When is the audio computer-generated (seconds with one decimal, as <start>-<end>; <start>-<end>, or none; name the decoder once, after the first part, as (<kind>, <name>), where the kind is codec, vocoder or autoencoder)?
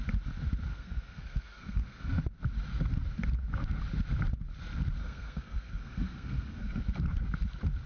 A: 0.7-2.2 (codec, SNAC); 5.0-6.8